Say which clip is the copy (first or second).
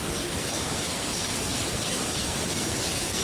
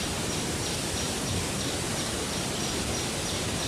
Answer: first